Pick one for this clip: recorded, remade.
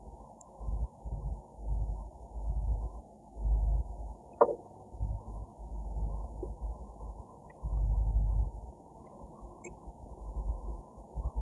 remade